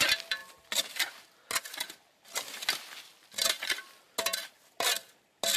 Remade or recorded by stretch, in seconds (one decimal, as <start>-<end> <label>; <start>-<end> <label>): 0.0-5.6 recorded